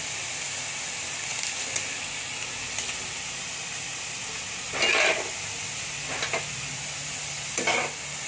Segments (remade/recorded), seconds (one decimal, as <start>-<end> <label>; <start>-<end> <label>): 0.0-8.3 recorded